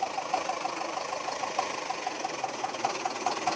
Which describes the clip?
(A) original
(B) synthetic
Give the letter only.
B